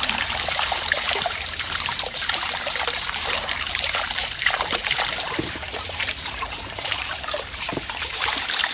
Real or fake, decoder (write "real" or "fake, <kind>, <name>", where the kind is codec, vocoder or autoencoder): fake, vocoder, BigVGAN v2